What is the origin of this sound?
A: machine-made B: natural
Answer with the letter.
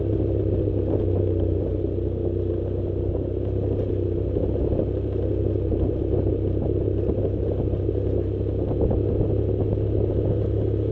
B